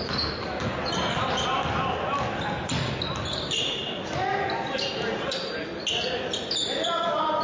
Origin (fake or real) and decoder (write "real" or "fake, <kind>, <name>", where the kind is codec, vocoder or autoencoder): real